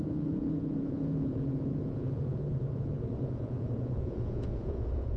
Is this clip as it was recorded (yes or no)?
no